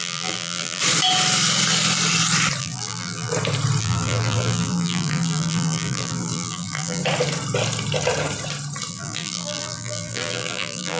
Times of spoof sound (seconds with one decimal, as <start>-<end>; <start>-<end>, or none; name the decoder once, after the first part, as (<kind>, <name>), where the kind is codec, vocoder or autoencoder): 0.0-0.8 (vocoder, BigVGAN v2); 2.6-3.3; 3.8-7.0; 8.9-11.0